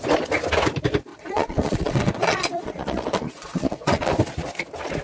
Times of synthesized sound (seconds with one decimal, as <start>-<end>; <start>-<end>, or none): 1.1-4.1